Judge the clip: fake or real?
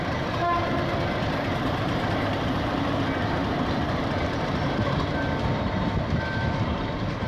fake